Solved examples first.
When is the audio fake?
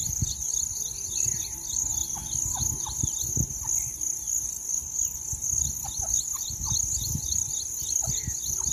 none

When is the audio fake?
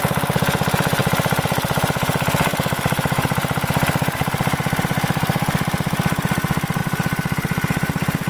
1.0-4.8 (vocoder, BigVGAN v2)